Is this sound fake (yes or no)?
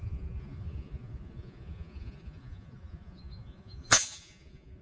yes